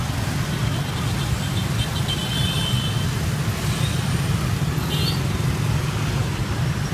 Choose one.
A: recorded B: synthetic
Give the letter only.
A